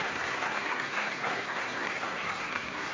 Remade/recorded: remade